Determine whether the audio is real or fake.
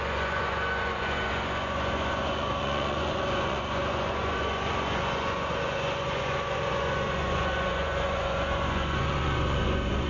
fake